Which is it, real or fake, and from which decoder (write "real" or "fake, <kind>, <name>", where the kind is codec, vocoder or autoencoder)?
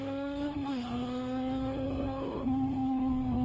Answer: fake, codec, SNAC